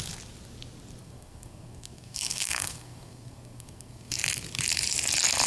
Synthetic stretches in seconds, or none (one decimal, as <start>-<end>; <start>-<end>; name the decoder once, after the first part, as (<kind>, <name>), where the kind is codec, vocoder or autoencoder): 1.0-4.2 (codec, SNAC)